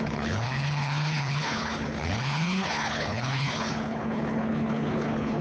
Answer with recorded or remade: remade